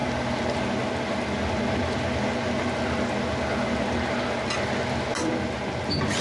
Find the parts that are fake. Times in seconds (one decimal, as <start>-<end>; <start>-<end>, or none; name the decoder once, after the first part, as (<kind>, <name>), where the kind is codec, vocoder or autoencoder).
none